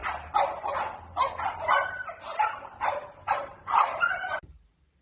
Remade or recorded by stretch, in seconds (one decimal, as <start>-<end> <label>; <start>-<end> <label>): 0.0-3.0 recorded; 3.0-5.0 remade